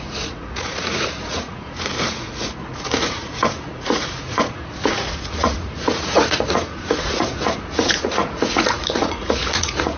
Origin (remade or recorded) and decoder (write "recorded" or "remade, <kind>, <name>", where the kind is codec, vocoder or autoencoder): remade, vocoder, Vocos